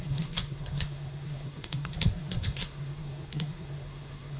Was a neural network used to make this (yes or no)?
yes